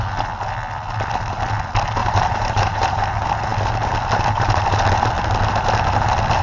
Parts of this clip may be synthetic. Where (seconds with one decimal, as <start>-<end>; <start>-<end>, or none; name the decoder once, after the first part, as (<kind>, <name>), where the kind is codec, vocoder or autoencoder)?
2.0-3.0 (vocoder, BigVGAN v2)